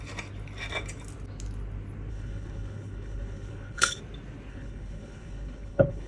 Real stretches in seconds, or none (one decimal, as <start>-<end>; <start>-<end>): 0.0-2.1; 4.0-4.5